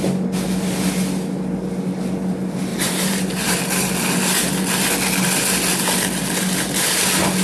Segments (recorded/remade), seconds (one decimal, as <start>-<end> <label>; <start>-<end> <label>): 0.0-2.7 recorded; 2.7-3.6 remade; 3.6-7.4 recorded

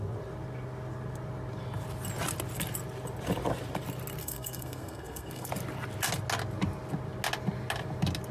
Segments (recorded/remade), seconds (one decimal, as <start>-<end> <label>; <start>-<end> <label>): 0.0-4.2 recorded; 4.2-5.5 remade; 5.5-8.3 recorded

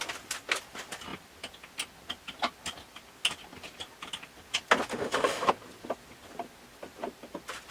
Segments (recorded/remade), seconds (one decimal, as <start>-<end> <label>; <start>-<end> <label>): 0.0-4.9 recorded; 4.9-5.5 remade; 5.5-7.7 recorded

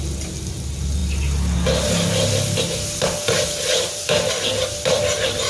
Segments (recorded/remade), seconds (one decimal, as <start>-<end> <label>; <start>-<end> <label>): 0.0-5.5 recorded

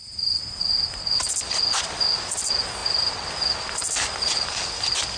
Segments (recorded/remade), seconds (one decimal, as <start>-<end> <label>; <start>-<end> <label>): 0.0-5.2 recorded

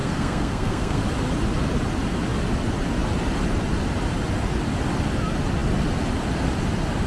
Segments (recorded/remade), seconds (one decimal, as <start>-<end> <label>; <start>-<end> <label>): 0.0-1.0 remade; 1.0-7.1 recorded

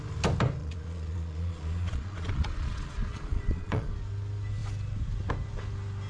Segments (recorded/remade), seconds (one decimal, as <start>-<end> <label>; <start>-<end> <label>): 0.0-0.6 recorded; 0.6-3.9 remade; 3.9-6.1 recorded

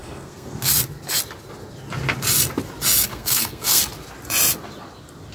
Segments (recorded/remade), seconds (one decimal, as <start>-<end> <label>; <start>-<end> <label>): 0.0-0.7 remade; 0.7-3.1 recorded; 3.1-3.8 remade; 3.8-5.3 recorded